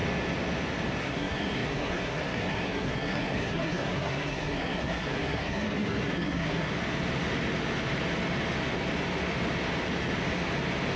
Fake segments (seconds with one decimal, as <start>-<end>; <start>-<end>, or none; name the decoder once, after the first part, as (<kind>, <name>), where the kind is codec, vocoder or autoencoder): 1.0-6.7 (codec, SNAC)